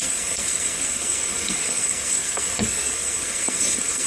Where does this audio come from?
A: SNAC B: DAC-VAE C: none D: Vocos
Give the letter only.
A